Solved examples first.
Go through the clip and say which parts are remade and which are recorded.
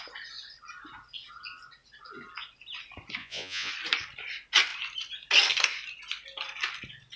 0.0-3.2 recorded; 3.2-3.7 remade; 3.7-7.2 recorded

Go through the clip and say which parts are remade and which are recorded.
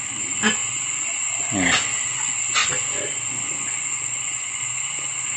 0.0-0.6 recorded; 0.6-1.5 remade; 1.5-2.6 recorded; 2.6-4.6 remade; 4.6-5.4 recorded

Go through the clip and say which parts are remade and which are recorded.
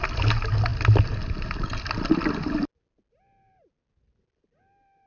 0.0-5.1 recorded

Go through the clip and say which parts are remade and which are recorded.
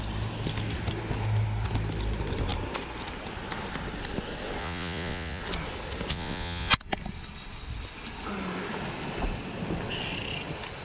0.0-4.6 recorded; 4.6-5.4 remade; 5.4-6.1 recorded; 6.1-6.7 remade; 6.7-10.8 recorded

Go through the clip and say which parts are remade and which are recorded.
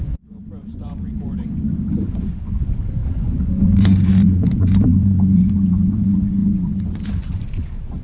0.0-8.0 remade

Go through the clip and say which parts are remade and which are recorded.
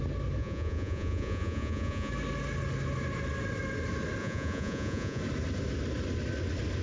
0.0-0.4 recorded; 0.4-2.1 remade; 2.1-4.2 recorded; 4.2-5.2 remade; 5.2-6.8 recorded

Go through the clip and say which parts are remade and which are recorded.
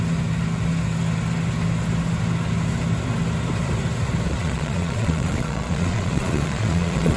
0.0-4.3 recorded; 4.3-7.2 remade